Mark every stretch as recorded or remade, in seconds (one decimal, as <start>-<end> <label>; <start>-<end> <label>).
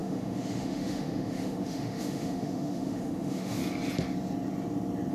0.0-3.6 remade; 3.6-5.1 recorded